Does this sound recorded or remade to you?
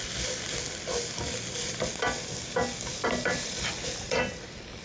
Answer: recorded